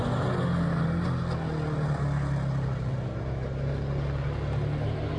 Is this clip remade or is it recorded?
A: recorded